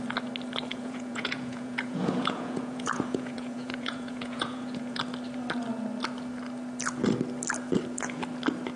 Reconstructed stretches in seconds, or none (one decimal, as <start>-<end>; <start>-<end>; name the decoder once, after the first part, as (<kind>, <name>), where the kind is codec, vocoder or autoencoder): 0.7-5.0 (vocoder, Vocos)